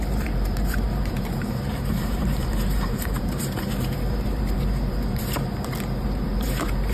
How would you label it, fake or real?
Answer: fake